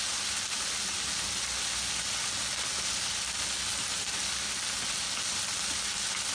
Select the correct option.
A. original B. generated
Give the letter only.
A